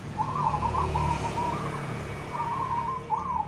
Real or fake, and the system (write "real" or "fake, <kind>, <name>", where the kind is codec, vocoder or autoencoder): fake, vocoder, Vocos